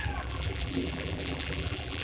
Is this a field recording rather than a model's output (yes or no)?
no